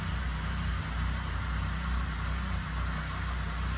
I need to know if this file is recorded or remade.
recorded